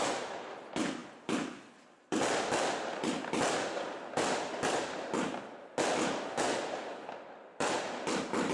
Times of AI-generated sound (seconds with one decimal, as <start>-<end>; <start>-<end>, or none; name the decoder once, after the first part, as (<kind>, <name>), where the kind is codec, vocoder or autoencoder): none